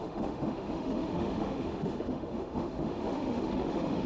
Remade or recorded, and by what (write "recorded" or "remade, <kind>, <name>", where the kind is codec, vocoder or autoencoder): remade, autoencoder, DAC-VAE